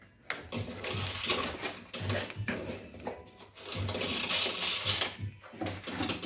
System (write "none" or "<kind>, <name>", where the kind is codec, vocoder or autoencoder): none